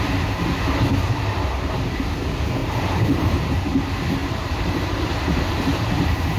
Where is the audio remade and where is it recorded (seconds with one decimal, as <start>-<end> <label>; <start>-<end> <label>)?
0.0-2.6 recorded; 2.6-3.6 remade; 3.6-4.2 recorded; 4.2-6.4 remade